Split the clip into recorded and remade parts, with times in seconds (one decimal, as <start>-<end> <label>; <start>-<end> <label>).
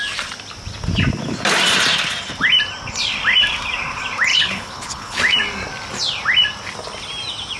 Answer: 0.0-4.3 recorded; 4.3-5.2 remade; 5.2-7.6 recorded